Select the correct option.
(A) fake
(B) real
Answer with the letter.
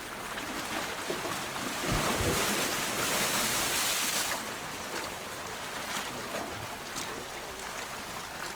B